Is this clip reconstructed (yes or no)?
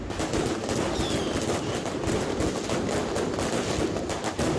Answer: no